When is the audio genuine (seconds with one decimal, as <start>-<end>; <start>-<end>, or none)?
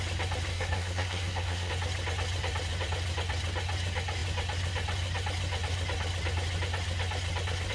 0.0-0.5; 1.7-7.7